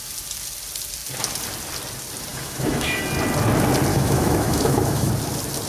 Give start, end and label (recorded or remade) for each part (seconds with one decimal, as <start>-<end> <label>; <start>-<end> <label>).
0.0-2.3 recorded; 2.3-3.0 remade; 3.0-3.9 recorded; 3.9-5.1 remade; 5.1-5.7 recorded